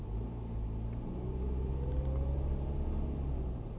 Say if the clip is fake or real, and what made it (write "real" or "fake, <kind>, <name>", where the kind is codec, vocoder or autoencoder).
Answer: real